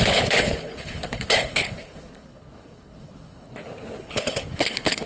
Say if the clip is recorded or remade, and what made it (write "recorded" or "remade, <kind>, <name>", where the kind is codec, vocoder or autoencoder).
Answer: remade, codec, HILCodec